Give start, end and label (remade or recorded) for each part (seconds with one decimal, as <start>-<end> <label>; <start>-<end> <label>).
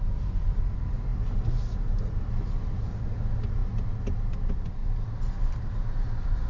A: 0.0-6.5 recorded